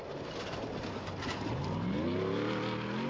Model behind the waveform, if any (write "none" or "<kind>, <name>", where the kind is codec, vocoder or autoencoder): none